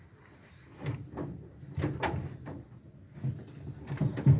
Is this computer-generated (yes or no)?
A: no